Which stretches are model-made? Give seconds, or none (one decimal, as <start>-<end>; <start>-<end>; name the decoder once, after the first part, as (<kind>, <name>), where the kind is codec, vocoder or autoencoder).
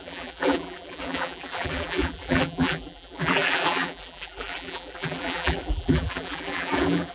0.0-7.1 (vocoder, BigVGAN v2)